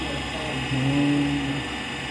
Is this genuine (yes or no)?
yes